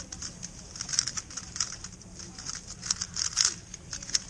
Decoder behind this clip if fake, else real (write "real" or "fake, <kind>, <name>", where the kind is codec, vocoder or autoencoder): fake, vocoder, BigVGAN v2